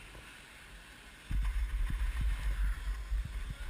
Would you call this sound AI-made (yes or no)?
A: no